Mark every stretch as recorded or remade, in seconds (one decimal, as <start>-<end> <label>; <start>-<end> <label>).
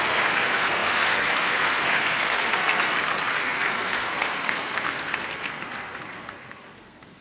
0.0-7.2 remade